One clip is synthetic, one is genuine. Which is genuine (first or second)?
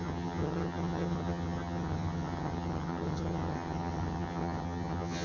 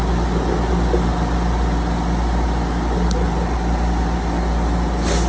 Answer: second